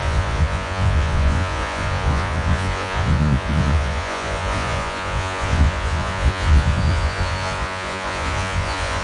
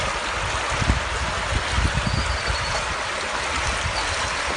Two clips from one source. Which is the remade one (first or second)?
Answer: first